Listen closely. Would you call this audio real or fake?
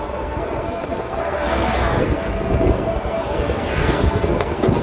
fake